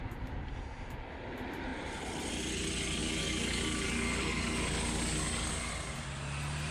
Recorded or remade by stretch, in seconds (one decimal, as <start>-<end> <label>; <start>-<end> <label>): 0.0-3.0 recorded; 3.0-5.7 remade; 5.7-6.7 recorded